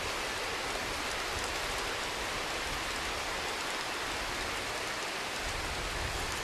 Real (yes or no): yes